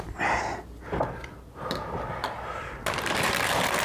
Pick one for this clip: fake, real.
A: real